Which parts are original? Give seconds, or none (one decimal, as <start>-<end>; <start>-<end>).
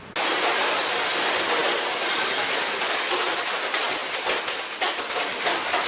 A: 0.0-5.9